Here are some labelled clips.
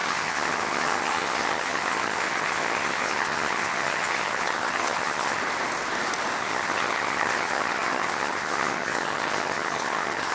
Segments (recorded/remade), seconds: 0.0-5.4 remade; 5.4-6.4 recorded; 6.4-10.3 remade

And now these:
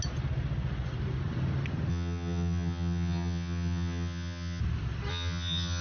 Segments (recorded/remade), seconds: 0.0-1.9 recorded; 1.9-4.6 remade; 4.6-5.1 recorded; 5.1-5.8 remade

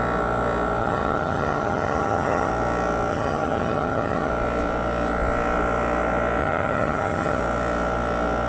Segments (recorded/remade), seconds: 0.0-0.8 recorded; 0.8-2.5 remade; 2.5-3.1 recorded; 3.1-4.3 remade; 4.3-6.4 recorded; 6.4-7.4 remade; 7.4-8.5 recorded